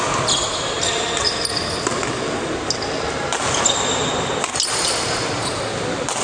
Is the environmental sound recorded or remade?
recorded